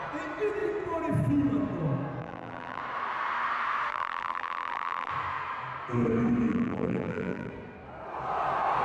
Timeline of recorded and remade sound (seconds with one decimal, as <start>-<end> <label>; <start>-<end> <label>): 0.0-2.2 recorded; 2.2-2.8 remade; 2.8-3.9 recorded; 3.9-5.1 remade; 5.1-6.5 recorded; 6.5-7.5 remade; 7.5-8.8 recorded